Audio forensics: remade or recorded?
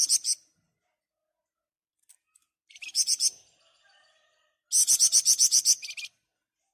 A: recorded